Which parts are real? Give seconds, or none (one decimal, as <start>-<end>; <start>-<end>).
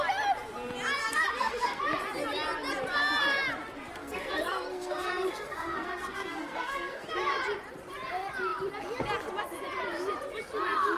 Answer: 0.0-1.0; 1.8-4.0; 7.1-11.0